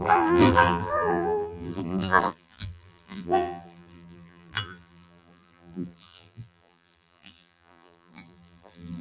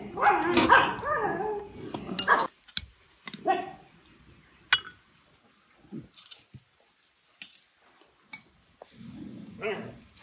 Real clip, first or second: second